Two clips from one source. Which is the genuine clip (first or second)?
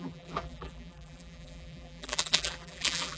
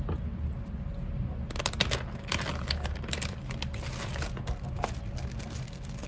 second